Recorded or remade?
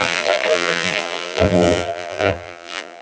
remade